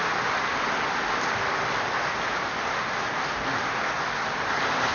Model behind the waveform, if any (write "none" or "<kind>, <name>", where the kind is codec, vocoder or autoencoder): none